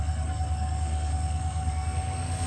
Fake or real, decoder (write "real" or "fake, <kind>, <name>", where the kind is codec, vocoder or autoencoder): fake, codec, SNAC